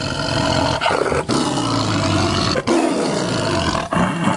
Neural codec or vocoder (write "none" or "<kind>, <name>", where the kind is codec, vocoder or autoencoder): none